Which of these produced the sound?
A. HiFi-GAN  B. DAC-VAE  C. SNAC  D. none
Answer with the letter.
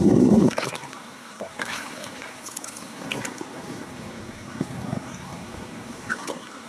C